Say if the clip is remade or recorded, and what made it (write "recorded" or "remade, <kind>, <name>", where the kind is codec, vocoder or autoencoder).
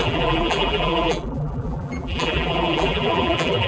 remade, vocoder, BigVGAN v2